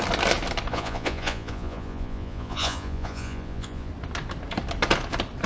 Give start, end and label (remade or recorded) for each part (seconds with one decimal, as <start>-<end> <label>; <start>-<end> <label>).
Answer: 0.0-0.7 recorded; 0.7-3.9 remade; 3.9-5.5 recorded